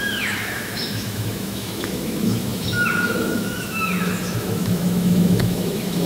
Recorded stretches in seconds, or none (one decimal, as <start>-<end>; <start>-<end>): none